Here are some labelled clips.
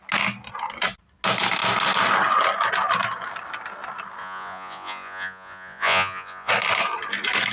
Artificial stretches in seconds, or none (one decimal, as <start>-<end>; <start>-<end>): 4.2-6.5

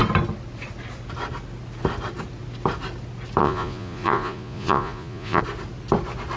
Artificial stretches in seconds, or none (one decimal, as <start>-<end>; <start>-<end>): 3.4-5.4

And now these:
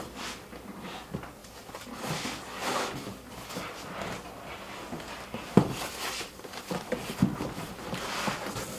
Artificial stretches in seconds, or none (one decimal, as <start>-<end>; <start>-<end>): none

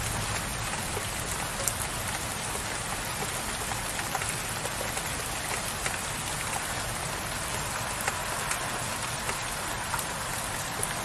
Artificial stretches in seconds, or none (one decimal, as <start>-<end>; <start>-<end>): none

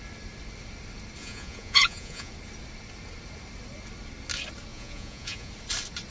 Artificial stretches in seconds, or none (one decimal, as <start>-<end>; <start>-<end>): 1.2-2.3; 4.7-5.5

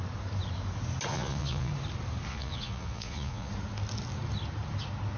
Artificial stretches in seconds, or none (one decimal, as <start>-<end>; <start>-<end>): 1.1-1.7; 2.3-3.5

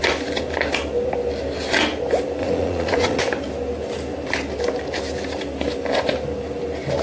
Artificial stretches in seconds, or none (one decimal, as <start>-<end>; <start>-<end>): 2.4-3.2

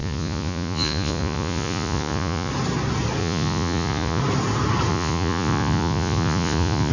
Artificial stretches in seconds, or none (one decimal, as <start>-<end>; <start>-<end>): 0.0-2.5; 3.2-4.2; 4.9-6.9